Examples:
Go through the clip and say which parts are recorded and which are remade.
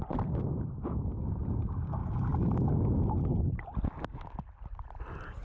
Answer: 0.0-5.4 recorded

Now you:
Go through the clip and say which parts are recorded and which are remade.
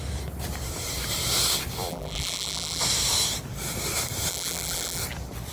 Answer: 0.0-1.9 recorded; 1.9-2.8 remade; 2.8-4.3 recorded; 4.3-5.0 remade; 5.0-5.5 recorded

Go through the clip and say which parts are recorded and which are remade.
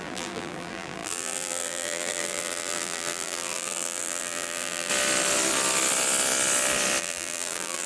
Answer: 0.0-4.9 remade; 4.9-7.0 recorded; 7.0-7.9 remade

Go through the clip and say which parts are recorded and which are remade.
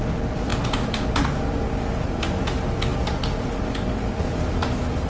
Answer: 0.0-5.1 recorded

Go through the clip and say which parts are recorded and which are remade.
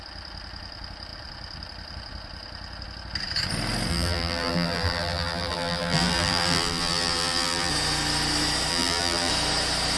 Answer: 0.0-3.9 recorded; 3.9-7.7 remade; 7.7-8.7 recorded; 8.7-9.3 remade; 9.3-10.0 recorded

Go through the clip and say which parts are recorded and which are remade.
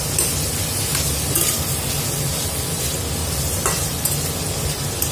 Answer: 0.0-3.2 recorded; 3.2-4.0 remade; 4.0-5.1 recorded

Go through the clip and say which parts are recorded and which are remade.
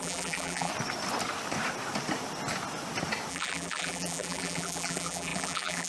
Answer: 0.0-0.7 remade; 0.7-3.3 recorded; 3.3-5.9 remade